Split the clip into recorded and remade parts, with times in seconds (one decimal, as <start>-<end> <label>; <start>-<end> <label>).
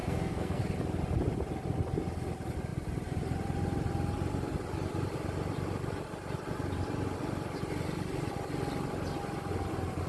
0.0-0.6 remade; 0.6-10.1 recorded